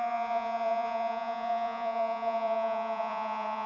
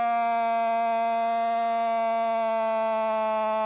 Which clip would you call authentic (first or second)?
second